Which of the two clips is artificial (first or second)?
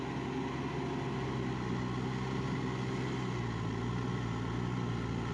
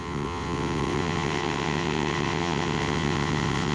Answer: second